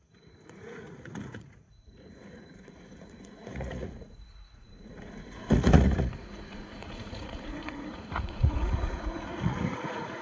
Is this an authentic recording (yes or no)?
no